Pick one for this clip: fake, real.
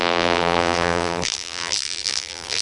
fake